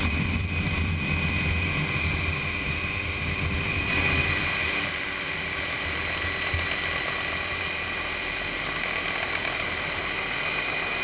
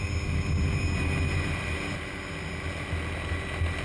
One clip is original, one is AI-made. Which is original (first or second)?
second